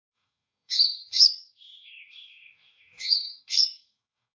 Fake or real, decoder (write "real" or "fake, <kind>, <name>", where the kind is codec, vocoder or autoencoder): fake, codec, DAC